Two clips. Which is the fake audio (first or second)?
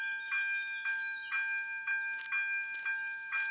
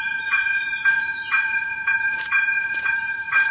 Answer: second